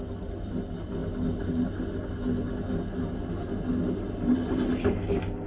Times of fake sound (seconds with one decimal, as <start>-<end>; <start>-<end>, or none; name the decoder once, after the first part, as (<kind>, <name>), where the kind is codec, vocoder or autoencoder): none